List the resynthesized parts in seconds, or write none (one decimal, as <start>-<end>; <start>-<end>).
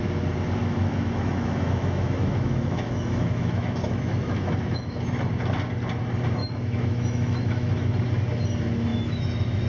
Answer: 0.6-5.3; 6.4-7.7; 8.9-9.7